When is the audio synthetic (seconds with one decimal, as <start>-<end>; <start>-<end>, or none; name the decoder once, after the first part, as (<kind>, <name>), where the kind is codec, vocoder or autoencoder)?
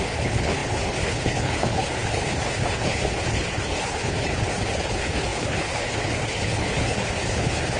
0.0-7.8 (codec, HILCodec)